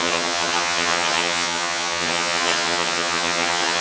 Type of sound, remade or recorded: remade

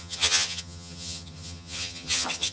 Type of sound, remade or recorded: remade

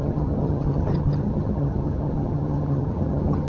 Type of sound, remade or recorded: remade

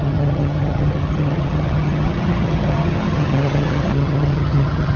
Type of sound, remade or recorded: remade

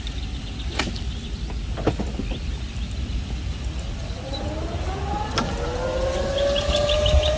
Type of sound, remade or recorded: recorded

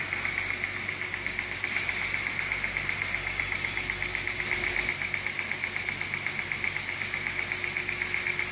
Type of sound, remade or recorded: recorded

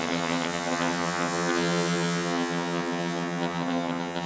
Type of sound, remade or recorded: remade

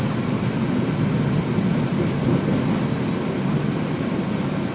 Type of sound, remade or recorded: recorded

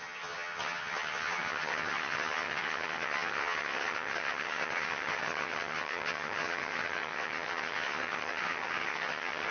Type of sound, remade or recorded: remade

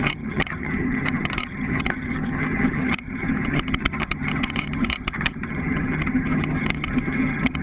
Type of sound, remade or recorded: remade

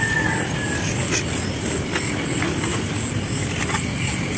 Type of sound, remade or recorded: recorded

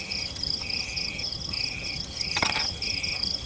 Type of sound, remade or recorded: remade